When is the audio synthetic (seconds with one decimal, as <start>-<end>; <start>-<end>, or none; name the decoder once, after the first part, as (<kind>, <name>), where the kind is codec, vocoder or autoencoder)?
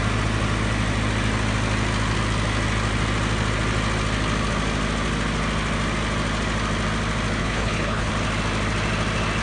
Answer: 7.4-8.1 (codec, HILCodec)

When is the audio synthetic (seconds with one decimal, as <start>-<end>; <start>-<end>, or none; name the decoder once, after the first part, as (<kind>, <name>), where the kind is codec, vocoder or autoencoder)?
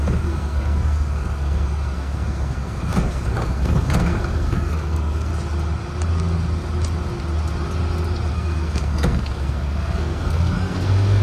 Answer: 0.0-5.3 (codec, SNAC); 8.3-11.2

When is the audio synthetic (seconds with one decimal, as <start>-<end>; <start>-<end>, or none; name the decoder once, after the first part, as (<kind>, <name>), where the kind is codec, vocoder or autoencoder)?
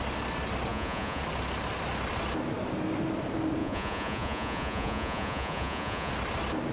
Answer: 0.7-1.2 (vocoder, Vocos); 3.6-6.1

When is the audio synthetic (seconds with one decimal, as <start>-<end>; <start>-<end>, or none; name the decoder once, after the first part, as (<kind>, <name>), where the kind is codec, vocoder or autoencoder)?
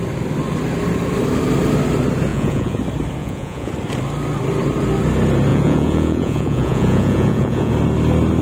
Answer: 2.3-2.8 (vocoder, Vocos); 3.2-3.7; 5.5-7.7